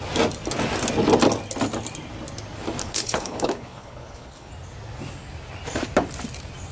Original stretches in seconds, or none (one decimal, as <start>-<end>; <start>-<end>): 0.0-2.8; 4.5-6.7